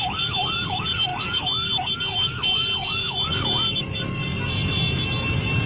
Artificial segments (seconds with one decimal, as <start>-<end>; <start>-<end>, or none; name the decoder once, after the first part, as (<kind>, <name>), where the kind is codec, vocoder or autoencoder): 0.0-4.2 (codec, DAC)

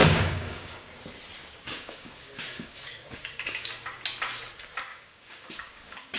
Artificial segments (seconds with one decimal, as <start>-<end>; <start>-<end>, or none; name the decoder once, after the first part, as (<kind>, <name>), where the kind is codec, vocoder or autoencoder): 0.0-0.9 (codec, DAC); 1.4-3.7; 4.9-6.2